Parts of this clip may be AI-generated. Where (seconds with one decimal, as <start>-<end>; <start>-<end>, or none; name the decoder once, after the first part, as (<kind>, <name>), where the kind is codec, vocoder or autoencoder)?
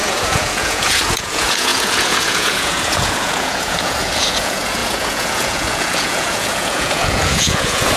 0.0-8.0 (vocoder, Vocos)